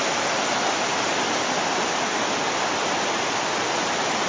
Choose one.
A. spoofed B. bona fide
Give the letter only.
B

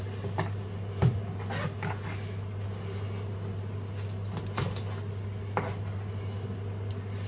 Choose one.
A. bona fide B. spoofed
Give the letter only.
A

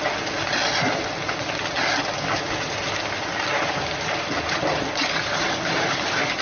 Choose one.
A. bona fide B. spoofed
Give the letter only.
A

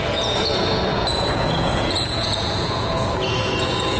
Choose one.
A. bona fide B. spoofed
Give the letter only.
B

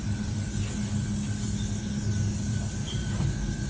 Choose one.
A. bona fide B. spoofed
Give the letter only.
A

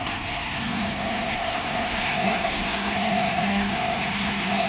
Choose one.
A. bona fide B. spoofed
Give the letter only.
B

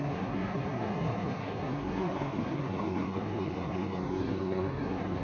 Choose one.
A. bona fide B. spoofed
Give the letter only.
B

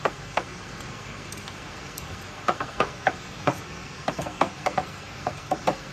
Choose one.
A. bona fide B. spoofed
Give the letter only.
B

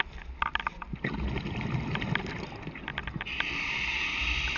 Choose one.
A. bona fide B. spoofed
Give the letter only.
A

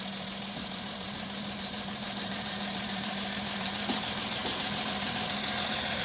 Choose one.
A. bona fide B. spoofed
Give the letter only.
B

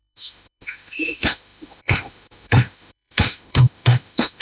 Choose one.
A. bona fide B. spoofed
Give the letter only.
B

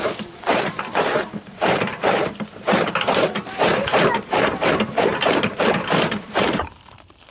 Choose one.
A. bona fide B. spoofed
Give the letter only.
B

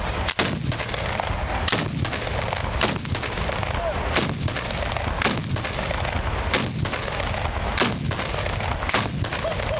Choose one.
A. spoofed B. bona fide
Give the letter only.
B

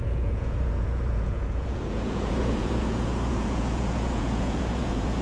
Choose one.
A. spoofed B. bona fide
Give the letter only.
A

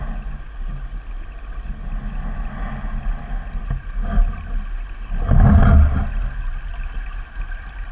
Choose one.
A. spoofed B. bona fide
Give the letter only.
B